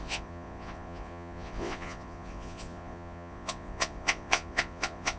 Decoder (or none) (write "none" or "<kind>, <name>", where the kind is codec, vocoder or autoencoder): vocoder, Vocos